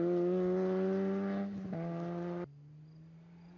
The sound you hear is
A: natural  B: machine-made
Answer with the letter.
A